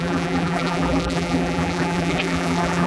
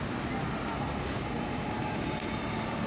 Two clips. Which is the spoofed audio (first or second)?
first